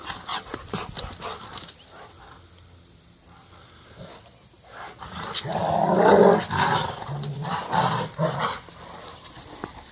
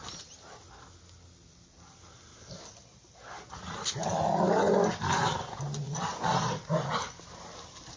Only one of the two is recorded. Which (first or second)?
second